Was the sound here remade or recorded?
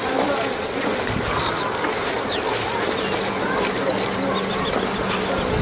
recorded